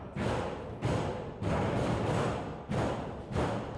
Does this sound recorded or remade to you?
remade